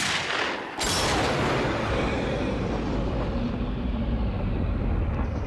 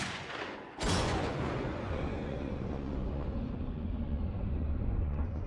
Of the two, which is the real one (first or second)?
first